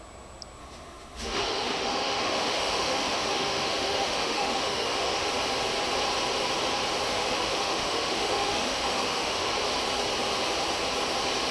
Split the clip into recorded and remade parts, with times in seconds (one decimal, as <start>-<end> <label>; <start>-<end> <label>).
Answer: 0.0-0.6 recorded; 0.6-5.3 remade; 5.3-7.1 recorded; 7.1-9.5 remade; 9.5-11.5 recorded